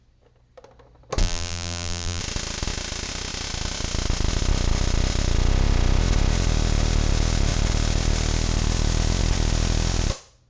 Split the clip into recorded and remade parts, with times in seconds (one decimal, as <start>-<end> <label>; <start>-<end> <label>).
0.0-1.2 recorded; 1.2-2.2 remade; 2.2-10.5 recorded